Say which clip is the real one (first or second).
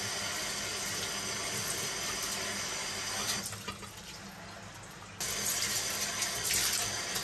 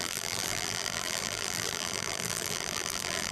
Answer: first